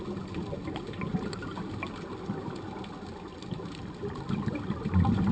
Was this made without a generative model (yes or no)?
yes